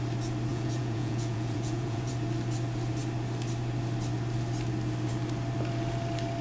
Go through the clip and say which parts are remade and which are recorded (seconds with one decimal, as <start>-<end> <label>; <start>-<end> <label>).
0.0-0.5 recorded; 0.5-2.1 remade; 2.1-6.4 recorded